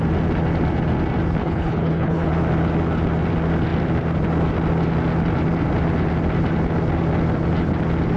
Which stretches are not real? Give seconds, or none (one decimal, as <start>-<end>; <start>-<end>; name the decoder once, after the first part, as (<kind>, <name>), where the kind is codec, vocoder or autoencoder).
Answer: 1.4-2.3 (codec, HILCodec)